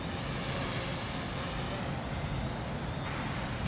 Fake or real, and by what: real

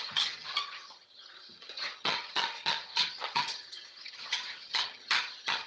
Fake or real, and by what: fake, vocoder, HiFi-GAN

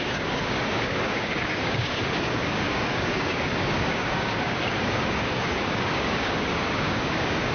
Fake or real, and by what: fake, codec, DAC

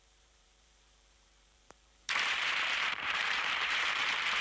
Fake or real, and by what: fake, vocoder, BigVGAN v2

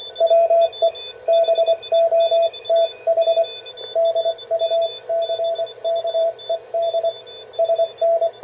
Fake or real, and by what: real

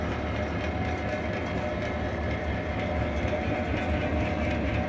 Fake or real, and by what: real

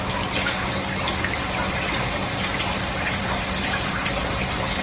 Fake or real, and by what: real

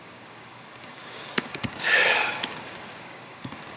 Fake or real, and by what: fake, codec, DAC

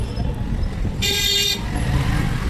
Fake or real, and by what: real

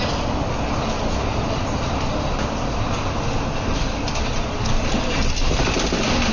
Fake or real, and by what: real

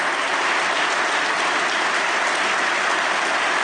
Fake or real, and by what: real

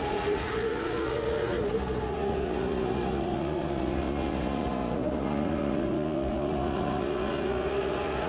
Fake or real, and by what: fake, vocoder, Vocos